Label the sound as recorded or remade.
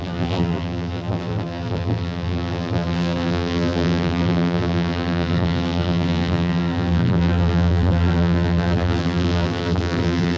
remade